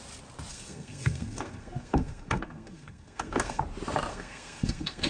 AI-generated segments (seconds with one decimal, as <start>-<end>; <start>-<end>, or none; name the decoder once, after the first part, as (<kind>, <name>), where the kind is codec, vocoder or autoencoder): 0.5-3.6 (codec, SNAC); 4.1-5.1